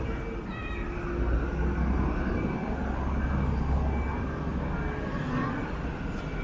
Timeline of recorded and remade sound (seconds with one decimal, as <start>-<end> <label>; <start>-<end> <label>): 0.0-6.4 recorded